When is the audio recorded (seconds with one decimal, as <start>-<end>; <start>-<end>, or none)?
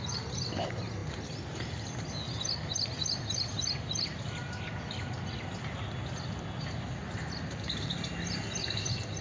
0.0-9.2